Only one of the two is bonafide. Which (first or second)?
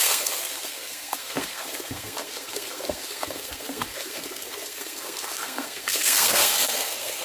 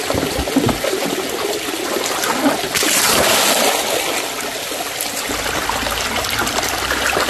second